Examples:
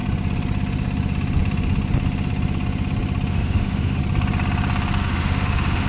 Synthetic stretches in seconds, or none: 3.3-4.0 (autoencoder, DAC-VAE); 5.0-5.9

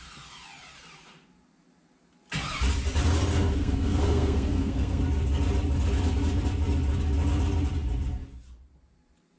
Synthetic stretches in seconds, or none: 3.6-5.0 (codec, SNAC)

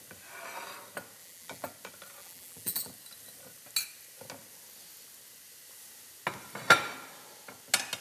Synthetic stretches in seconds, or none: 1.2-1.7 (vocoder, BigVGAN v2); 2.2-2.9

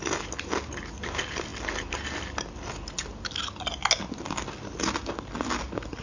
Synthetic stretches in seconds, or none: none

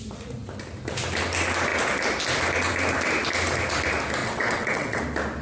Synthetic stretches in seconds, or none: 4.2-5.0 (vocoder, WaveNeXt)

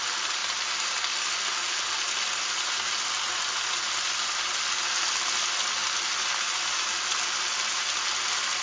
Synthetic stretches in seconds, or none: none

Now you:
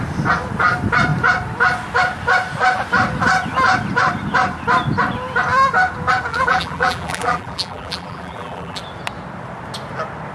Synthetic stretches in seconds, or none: 6.3-8.8 (vocoder, BigVGAN v2)